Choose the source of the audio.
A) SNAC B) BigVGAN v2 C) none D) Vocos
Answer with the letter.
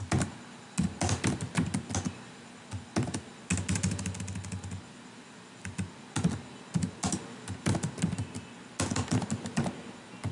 C